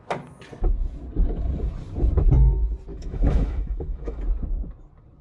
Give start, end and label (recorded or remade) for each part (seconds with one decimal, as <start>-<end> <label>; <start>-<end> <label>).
0.0-2.9 recorded; 2.9-4.2 remade; 4.2-5.2 recorded